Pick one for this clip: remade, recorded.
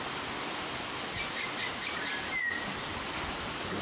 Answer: recorded